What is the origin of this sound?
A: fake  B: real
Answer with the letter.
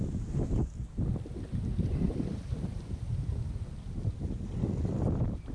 B